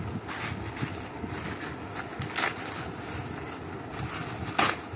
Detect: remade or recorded recorded